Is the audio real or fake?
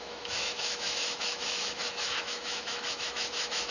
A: fake